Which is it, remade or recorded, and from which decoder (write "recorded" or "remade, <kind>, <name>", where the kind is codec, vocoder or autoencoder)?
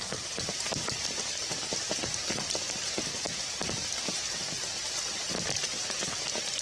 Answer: recorded